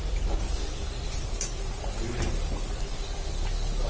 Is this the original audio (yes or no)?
yes